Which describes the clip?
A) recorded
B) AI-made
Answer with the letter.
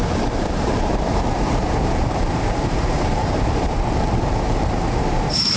B